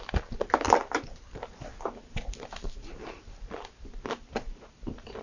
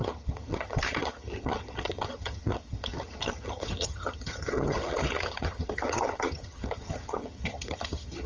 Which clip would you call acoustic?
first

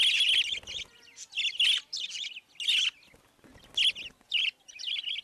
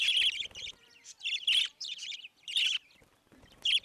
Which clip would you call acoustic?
first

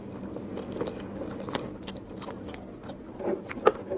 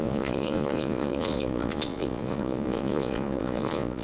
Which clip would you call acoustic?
first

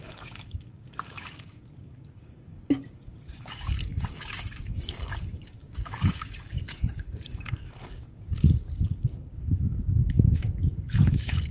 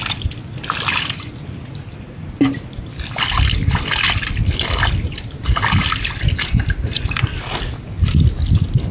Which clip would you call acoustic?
second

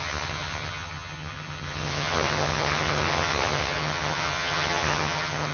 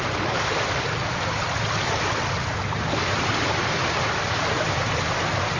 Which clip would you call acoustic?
second